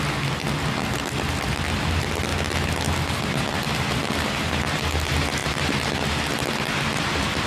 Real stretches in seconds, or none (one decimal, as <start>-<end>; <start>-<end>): 0.0-7.5